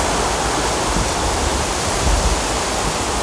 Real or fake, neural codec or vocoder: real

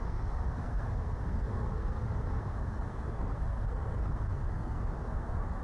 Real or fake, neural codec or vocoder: fake, codec, SNAC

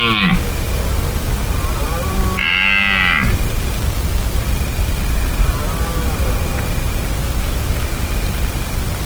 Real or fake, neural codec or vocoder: real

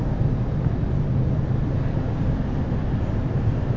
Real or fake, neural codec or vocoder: real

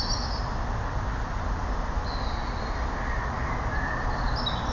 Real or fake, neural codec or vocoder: real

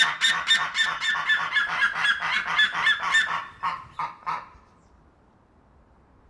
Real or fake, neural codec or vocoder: fake, vocoder, BigVGAN v2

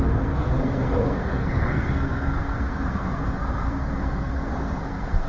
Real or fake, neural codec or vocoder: fake, codec, SNAC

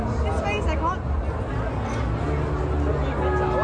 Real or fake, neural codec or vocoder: real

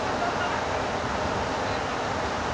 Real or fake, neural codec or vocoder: real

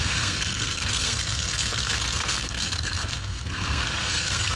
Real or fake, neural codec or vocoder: fake, codec, SNAC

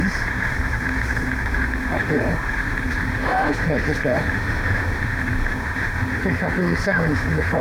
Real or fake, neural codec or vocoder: fake, autoencoder, DAC-VAE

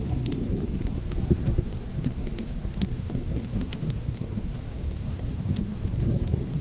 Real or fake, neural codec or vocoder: fake, codec, SNAC